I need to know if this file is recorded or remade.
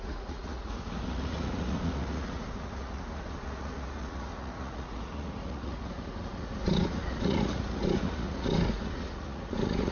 remade